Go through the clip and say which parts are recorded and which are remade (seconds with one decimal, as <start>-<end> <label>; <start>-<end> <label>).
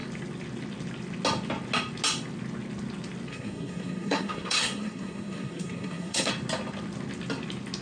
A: 0.0-3.3 recorded; 3.3-6.3 remade; 6.3-7.8 recorded